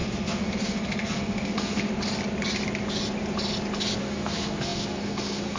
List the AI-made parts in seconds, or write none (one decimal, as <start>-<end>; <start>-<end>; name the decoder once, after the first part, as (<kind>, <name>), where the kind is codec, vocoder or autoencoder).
0.0-1.9 (codec, SNAC); 4.0-5.6